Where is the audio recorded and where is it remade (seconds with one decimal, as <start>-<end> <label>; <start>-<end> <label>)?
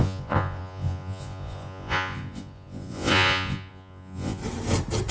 0.0-4.4 remade; 4.4-5.1 recorded